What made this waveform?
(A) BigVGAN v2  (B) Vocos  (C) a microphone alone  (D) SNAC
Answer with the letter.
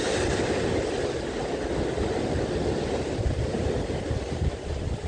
C